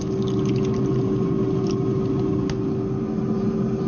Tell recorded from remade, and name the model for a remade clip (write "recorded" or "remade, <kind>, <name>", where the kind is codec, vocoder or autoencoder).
recorded